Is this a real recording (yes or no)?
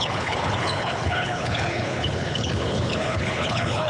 no